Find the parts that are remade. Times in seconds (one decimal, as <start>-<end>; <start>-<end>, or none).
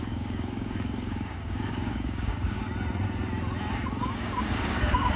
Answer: 0.0-2.6; 4.2-5.2